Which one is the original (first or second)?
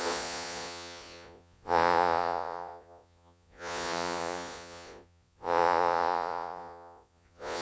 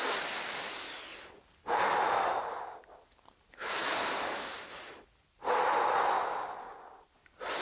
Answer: second